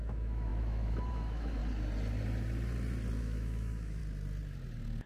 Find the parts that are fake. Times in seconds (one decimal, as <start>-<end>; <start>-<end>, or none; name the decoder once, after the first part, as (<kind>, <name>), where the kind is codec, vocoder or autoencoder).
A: 0.0-1.6 (autoencoder, DAC-VAE); 3.2-4.0